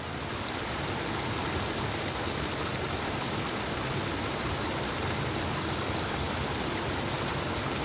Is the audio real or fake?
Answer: real